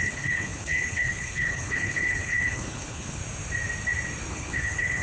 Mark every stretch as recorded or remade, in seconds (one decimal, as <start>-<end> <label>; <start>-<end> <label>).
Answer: 0.0-3.2 remade; 3.2-4.3 recorded; 4.3-5.0 remade